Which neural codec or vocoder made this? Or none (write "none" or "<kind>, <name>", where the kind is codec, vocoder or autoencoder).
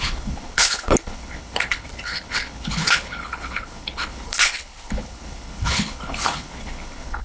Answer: codec, HILCodec